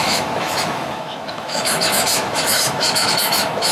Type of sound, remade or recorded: remade